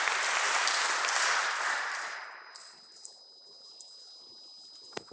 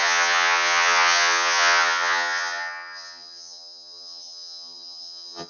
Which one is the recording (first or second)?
first